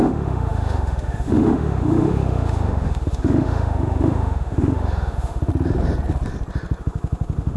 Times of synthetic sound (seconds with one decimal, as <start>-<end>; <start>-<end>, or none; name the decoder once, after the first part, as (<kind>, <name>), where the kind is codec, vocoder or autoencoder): 0.0-5.5 (autoencoder, DAC-VAE); 6.8-7.6